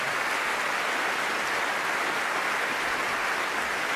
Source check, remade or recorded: recorded